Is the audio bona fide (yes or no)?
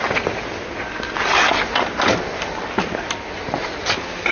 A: yes